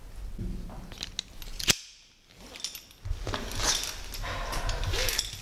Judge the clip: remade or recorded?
recorded